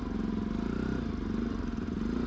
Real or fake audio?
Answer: real